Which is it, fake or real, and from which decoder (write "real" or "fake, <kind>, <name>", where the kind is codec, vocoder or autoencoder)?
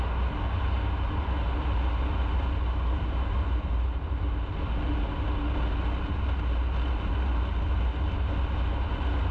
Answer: real